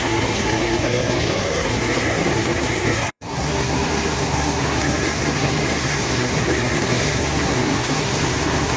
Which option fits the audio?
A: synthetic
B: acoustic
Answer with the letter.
A